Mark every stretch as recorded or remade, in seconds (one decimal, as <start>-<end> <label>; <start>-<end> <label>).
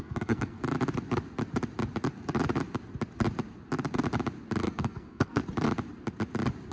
0.0-0.6 remade; 0.6-4.6 recorded; 4.6-5.4 remade; 5.4-6.7 recorded